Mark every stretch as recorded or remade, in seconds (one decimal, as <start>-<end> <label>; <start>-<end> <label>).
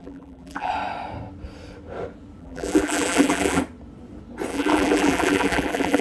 0.0-0.7 remade; 0.7-2.4 recorded; 2.4-3.6 remade; 3.6-4.5 recorded; 4.5-6.0 remade